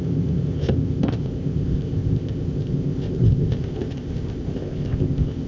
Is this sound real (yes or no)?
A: no